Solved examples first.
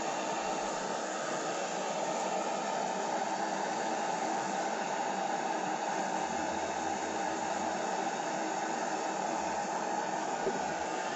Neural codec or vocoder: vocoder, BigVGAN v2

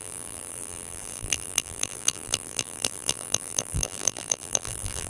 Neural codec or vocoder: vocoder, BigVGAN v2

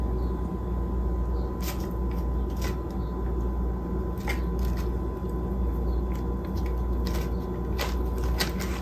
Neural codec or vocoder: none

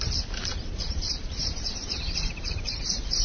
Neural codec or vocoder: vocoder, BigVGAN v2